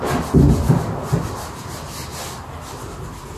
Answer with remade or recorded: recorded